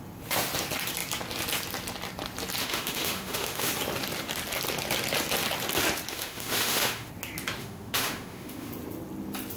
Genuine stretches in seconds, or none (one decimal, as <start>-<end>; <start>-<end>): 0.0-2.6; 3.7-6.1; 7.1-7.6; 8.7-9.6